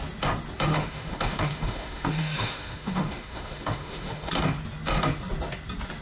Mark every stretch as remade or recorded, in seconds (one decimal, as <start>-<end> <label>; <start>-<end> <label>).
0.0-0.7 recorded; 0.7-4.3 remade; 4.3-6.0 recorded